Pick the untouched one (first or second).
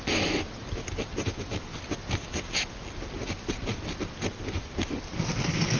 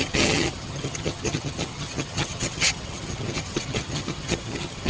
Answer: first